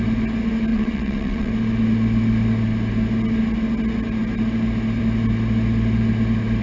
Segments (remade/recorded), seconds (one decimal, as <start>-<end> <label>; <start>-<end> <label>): 0.0-0.7 recorded; 0.7-1.5 remade; 1.5-6.6 recorded